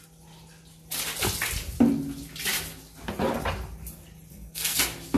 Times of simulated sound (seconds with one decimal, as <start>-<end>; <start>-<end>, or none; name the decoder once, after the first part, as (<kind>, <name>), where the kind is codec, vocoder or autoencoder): 4.3-4.8 (codec, SNAC)